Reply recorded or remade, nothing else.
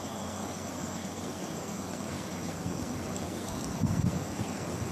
remade